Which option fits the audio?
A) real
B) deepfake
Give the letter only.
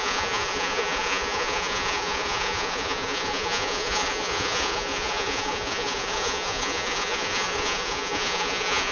B